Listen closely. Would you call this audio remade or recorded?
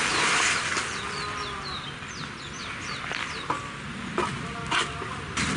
recorded